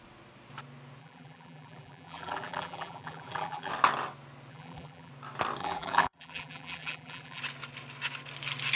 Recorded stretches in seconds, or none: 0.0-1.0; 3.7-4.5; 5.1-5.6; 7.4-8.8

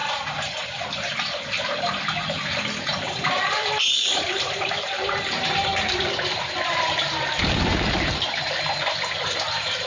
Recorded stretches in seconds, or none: 5.7-9.2

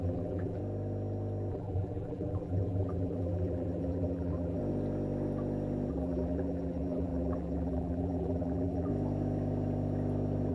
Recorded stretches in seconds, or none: 0.6-1.5; 4.6-5.9; 8.9-10.5

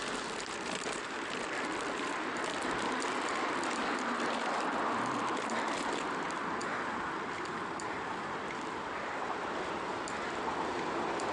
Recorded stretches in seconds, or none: 6.6-7.5